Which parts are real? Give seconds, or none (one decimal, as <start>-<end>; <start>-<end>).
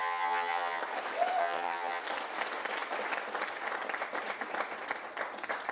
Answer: 0.8-1.4; 2.0-5.7